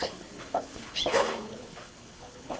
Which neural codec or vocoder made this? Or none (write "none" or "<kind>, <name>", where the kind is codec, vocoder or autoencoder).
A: codec, HILCodec